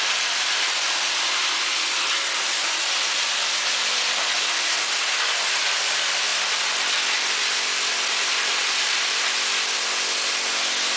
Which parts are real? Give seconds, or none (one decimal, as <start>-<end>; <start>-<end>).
0.0-11.0